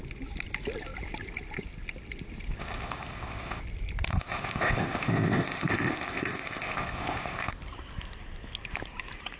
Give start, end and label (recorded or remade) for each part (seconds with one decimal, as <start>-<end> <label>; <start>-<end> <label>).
0.0-2.6 recorded; 2.6-3.6 remade; 3.6-4.1 recorded; 4.1-7.5 remade; 7.5-9.4 recorded